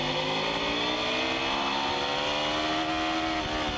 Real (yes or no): yes